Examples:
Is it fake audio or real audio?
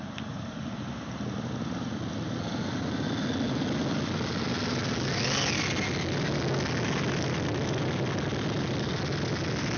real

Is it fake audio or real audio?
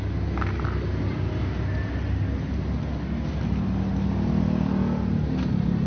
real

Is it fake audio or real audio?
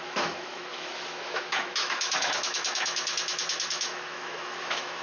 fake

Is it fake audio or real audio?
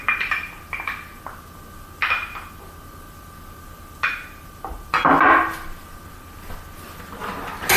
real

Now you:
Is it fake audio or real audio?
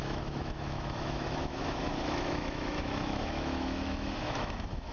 fake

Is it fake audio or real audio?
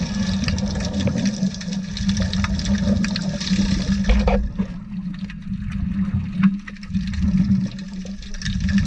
real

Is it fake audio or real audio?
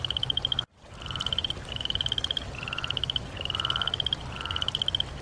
real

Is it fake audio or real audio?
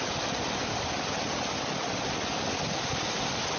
real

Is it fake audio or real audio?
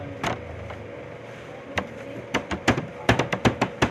real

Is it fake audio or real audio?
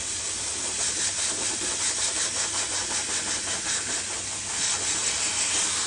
real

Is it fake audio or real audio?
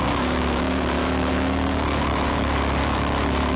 fake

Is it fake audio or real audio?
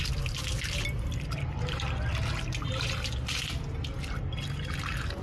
real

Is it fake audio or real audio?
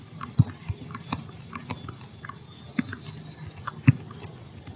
real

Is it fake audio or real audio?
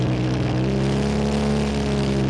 real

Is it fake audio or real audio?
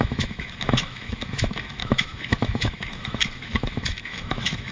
fake